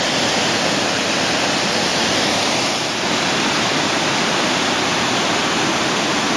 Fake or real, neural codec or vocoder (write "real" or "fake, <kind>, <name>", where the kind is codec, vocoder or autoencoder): real